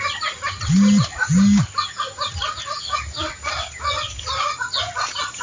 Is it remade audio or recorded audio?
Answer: recorded